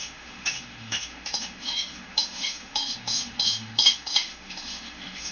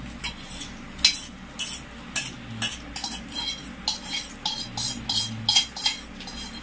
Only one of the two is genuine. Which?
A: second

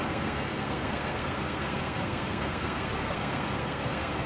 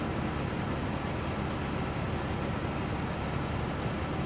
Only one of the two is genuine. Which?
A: second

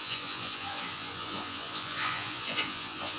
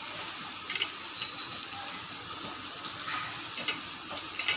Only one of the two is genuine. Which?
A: second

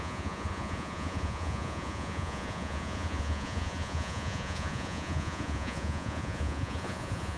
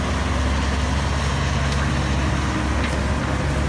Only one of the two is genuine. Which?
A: second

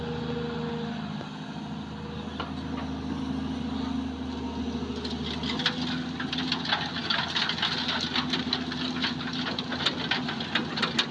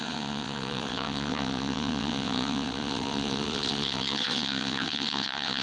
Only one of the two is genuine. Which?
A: first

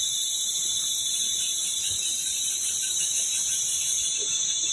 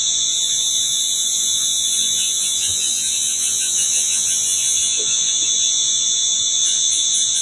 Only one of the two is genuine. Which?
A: first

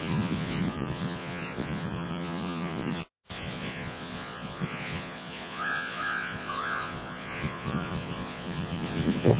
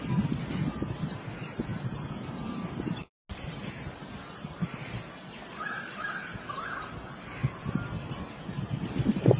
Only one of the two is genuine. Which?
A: second